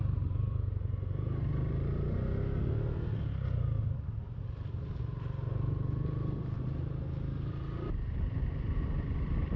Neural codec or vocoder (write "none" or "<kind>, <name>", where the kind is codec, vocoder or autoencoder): none